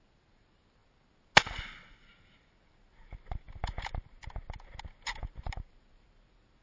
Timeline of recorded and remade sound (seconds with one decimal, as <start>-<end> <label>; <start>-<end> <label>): 0.0-6.6 recorded